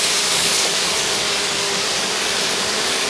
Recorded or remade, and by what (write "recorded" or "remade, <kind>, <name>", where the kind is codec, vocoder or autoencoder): remade, codec, DAC